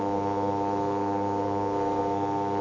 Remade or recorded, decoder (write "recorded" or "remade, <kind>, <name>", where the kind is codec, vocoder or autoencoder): remade, codec, SNAC